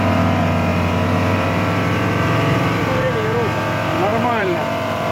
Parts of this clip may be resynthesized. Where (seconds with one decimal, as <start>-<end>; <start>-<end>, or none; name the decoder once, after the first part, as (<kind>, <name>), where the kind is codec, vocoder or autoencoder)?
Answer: 0.7-2.8 (vocoder, BigVGAN v2); 4.1-5.1